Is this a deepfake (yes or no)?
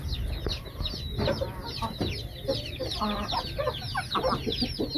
no